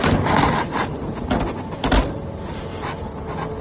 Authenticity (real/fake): real